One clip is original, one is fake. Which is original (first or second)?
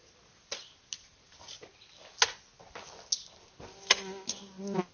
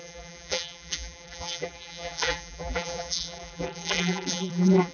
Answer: first